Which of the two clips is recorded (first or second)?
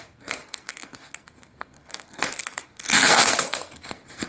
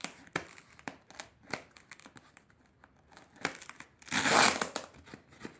second